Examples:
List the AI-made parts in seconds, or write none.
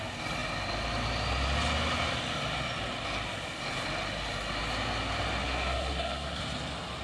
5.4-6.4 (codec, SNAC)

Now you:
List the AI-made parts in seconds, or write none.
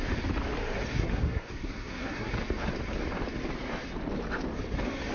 0.9-2.3 (codec, SNAC)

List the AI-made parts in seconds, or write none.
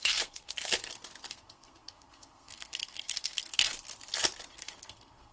0.0-0.6 (codec, SNAC); 1.3-3.7; 4.5-5.3